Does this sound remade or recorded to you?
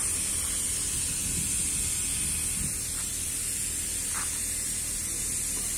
recorded